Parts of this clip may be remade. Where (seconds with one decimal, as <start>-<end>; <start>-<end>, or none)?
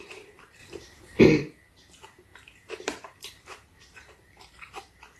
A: 0.6-1.2; 2.3-4.8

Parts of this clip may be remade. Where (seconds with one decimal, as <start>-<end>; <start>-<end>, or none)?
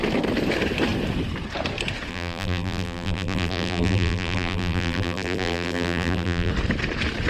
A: 2.1-6.5